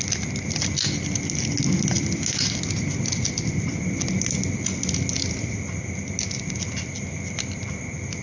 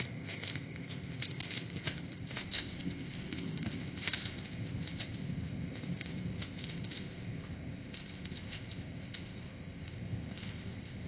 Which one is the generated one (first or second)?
second